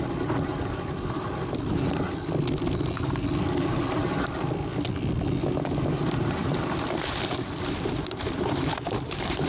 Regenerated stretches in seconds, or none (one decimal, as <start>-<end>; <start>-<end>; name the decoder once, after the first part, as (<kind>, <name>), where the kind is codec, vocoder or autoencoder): 0.0-4.6 (vocoder, BigVGAN v2); 5.6-9.5

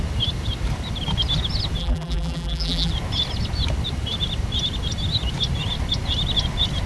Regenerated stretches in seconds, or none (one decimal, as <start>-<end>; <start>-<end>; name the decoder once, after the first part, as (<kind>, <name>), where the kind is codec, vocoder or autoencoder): 1.8-2.9 (vocoder, BigVGAN v2)

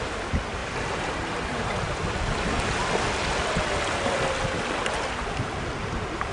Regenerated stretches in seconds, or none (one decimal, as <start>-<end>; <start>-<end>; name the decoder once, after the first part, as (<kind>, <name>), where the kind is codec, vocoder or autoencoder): 0.0-2.0 (vocoder, BigVGAN v2); 5.8-6.3

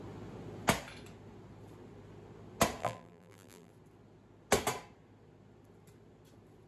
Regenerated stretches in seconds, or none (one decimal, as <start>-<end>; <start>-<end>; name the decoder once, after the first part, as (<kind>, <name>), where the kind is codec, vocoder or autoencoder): 2.8-3.7 (vocoder, BigVGAN v2)

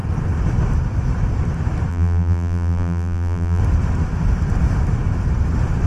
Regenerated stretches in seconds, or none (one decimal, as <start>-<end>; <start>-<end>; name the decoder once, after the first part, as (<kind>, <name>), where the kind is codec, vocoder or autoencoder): 1.9-3.6 (vocoder, BigVGAN v2)